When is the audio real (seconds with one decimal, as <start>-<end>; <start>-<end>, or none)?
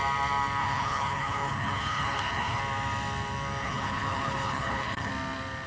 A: 0.0-0.6; 2.6-3.6; 5.1-5.7